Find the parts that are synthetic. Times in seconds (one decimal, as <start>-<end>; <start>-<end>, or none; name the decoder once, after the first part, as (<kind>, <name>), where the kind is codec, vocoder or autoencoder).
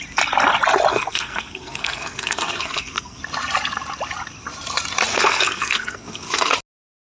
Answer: 0.9-3.2 (codec, SNAC); 5.1-6.5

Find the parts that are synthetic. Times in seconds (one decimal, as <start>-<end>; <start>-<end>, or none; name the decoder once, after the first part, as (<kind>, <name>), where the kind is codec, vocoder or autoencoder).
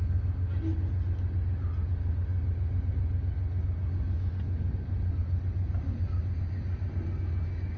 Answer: none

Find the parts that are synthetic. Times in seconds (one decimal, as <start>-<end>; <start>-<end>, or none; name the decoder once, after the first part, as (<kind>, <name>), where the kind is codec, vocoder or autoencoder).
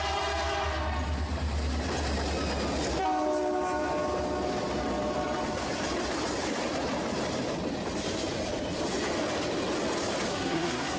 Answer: 10.3-11.0 (codec, SNAC)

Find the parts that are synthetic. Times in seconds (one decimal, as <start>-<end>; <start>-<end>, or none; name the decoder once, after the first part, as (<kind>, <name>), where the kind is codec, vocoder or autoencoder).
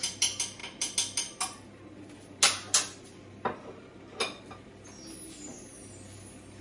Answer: none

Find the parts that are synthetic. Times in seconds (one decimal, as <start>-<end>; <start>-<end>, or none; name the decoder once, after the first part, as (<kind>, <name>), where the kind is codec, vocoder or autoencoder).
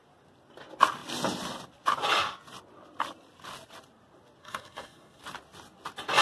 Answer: 4.4-5.2 (codec, SNAC)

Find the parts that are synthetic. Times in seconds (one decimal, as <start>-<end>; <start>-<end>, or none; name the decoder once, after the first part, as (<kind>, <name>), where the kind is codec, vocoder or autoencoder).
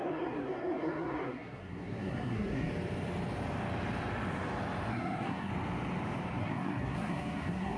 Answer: 0.0-2.7 (codec, SNAC); 4.9-5.5; 6.4-7.8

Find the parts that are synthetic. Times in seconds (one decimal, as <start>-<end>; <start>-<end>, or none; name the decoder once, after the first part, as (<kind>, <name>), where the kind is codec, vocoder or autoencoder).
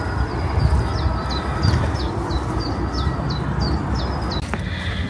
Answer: none